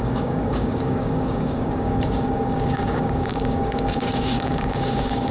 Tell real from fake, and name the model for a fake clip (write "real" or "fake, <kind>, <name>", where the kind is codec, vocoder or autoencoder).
fake, codec, DAC